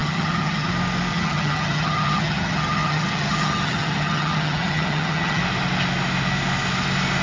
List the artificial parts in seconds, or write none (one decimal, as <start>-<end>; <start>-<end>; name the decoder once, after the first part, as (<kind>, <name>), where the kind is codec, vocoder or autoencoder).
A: 0.0-0.7 (vocoder, HiFi-GAN); 1.1-5.4

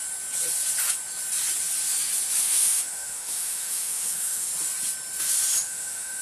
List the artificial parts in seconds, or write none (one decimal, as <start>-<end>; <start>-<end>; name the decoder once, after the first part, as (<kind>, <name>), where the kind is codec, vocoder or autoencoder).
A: 2.4-4.5 (autoencoder, DAC-VAE); 5.6-6.2

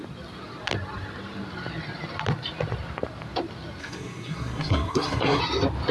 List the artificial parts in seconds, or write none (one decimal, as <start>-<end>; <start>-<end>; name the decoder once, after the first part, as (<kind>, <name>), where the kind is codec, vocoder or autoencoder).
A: 3.8-5.4 (codec, SNAC)

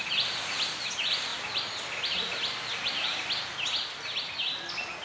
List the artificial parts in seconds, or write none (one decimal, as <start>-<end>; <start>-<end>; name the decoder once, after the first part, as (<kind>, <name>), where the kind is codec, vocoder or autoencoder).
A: none

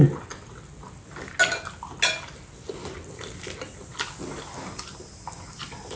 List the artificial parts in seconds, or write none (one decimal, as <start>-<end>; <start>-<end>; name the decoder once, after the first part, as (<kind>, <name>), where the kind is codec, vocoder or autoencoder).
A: none